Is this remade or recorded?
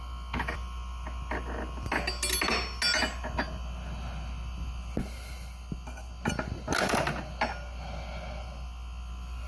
recorded